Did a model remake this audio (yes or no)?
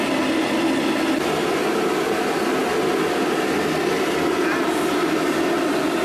no